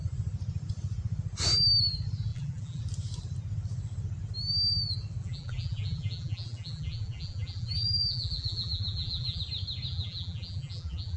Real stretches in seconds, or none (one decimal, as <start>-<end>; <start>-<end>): 0.0-2.3; 2.8-5.2; 9.4-9.9